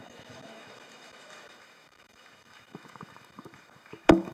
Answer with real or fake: fake